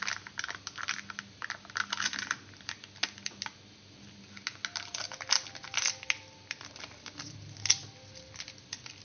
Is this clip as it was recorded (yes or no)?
yes